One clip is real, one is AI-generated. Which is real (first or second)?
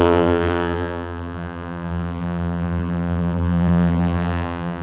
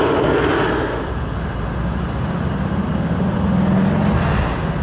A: second